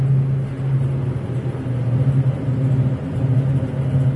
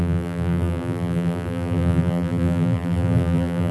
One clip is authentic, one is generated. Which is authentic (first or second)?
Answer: first